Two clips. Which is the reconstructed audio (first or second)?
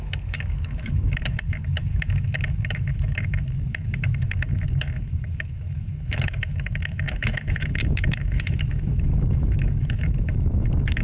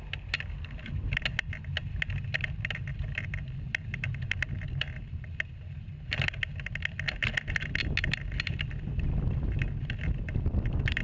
first